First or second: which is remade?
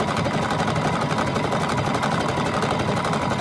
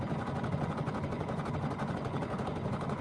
second